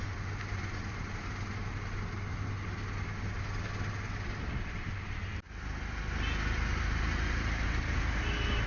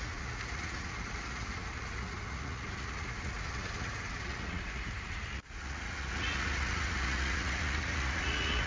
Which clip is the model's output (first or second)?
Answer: second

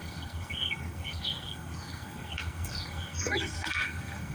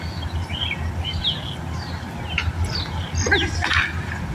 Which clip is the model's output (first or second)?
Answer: first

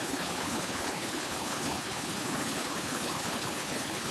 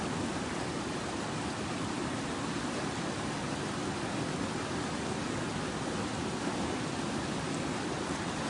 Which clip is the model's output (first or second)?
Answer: first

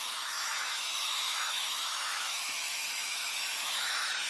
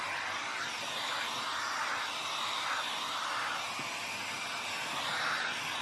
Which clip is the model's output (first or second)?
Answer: first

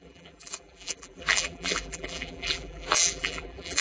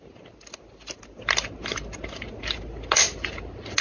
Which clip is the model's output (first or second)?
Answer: first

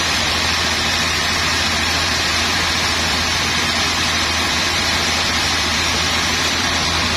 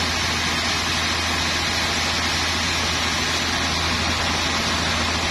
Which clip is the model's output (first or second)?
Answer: first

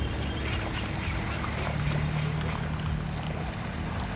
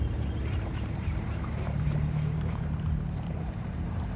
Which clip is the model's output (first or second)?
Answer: second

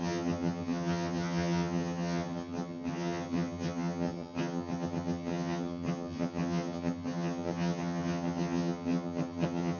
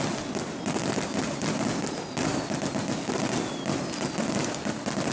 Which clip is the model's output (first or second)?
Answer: first